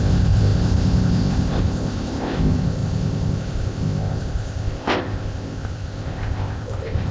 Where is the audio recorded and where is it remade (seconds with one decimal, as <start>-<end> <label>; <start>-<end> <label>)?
0.0-7.1 remade